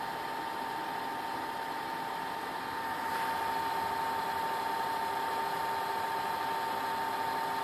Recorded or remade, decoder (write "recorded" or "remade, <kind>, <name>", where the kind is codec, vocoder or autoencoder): recorded